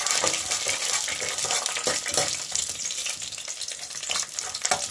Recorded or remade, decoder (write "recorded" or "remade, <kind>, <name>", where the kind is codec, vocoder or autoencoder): recorded